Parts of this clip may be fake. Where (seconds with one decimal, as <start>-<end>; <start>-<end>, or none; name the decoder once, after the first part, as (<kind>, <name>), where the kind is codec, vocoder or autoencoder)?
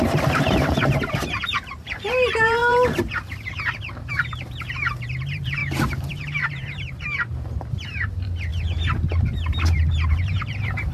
0.0-8.5 (vocoder, BigVGAN v2); 9.1-10.9